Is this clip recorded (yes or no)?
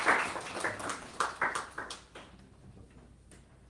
yes